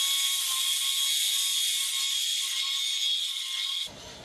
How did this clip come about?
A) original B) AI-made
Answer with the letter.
A